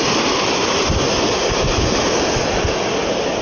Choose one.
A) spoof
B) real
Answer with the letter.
B